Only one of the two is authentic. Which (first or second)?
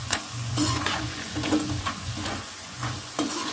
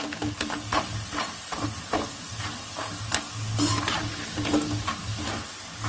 second